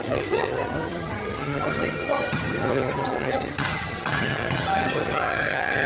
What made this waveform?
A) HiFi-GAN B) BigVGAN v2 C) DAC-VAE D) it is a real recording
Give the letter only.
A